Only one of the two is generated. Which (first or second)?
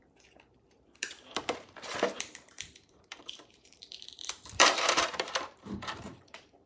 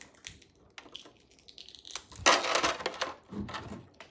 first